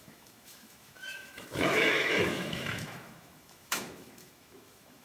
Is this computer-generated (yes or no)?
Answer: yes